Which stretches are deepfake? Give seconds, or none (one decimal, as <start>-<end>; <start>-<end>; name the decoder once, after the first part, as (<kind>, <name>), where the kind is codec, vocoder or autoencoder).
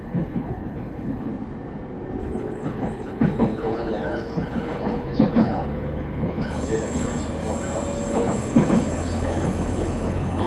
0.0-1.3 (codec, HILCodec); 2.2-7.1; 8.1-10.5